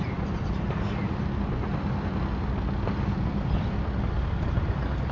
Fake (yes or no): no